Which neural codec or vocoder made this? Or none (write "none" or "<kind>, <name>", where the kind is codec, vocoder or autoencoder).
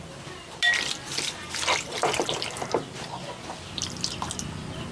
none